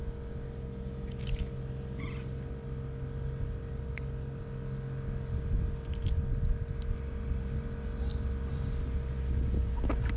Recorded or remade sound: recorded